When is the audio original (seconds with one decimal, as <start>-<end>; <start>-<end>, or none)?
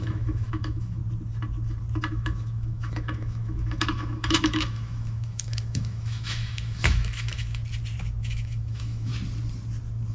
1.0-2.1; 7.6-8.2; 9.1-10.1